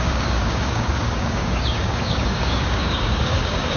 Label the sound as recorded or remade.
remade